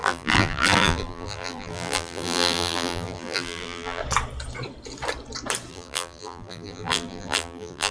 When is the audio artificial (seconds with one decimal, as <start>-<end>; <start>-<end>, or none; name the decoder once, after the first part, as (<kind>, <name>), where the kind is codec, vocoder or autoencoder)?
0.0-4.0 (vocoder, BigVGAN v2); 5.7-7.9